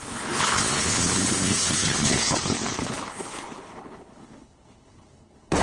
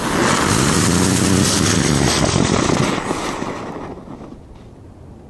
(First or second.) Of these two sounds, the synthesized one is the first